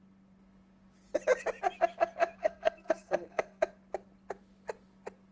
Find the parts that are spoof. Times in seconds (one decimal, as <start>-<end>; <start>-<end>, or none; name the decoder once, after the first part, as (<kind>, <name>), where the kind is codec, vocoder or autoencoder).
2.4-3.6 (codec, SNAC)